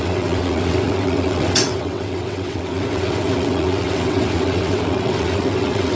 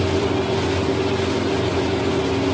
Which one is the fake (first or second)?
first